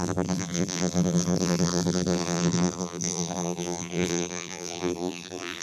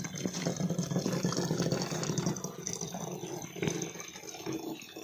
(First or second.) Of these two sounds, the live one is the second